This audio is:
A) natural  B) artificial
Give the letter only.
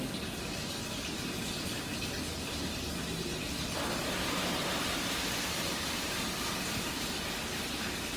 A